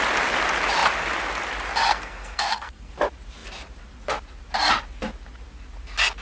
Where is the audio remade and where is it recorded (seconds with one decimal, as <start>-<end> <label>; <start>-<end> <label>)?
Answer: 0.0-1.9 recorded; 1.9-2.9 remade; 2.9-6.2 recorded